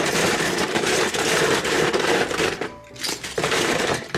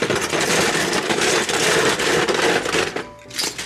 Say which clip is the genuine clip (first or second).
second